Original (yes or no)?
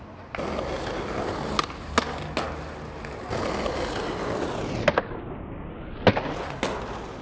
yes